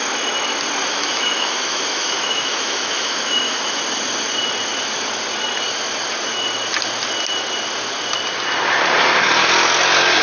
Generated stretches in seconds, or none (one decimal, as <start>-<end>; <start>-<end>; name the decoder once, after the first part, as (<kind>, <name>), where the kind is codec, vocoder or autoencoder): 0.9-3.8 (autoencoder, DAC-VAE)